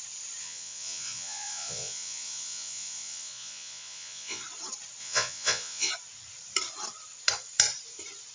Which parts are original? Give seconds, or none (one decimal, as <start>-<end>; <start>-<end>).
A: 0.0-0.4; 4.4-5.0; 5.9-8.3